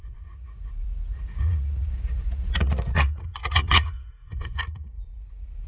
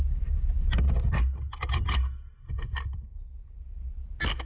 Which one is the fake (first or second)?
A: first